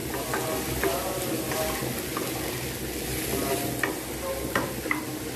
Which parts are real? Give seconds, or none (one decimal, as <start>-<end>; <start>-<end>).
0.0-5.4